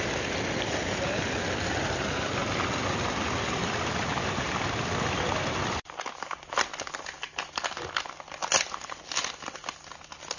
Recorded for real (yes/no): yes